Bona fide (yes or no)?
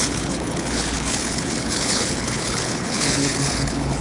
no